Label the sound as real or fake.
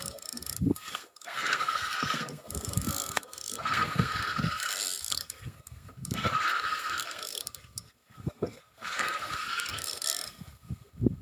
fake